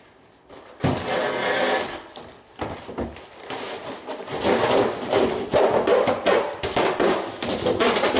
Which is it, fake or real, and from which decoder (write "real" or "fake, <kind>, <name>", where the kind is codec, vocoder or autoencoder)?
fake, vocoder, BigVGAN v2